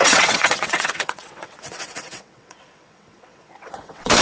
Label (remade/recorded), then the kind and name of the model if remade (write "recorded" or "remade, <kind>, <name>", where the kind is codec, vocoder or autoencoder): remade, vocoder, WaveNeXt